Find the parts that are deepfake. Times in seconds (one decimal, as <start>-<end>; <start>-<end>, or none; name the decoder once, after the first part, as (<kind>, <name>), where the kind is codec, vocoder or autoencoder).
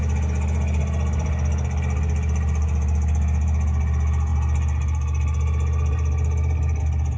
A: none